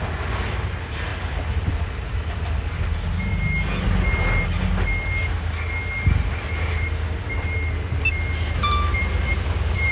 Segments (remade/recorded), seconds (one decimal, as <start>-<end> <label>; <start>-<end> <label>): 0.0-3.3 remade; 3.3-6.1 recorded; 6.1-9.9 remade